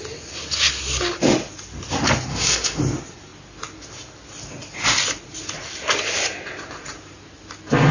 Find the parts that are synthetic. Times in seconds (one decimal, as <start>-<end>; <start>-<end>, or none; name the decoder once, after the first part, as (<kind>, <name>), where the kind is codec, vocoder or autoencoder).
2.3-2.8 (autoencoder, DAC-VAE)